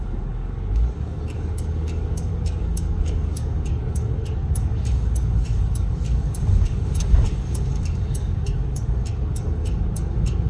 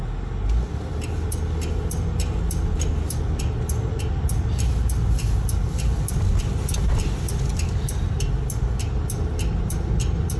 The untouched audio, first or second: second